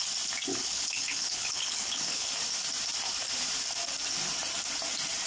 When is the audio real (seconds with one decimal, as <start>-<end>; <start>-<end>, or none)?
0.0-0.5; 2.3-5.3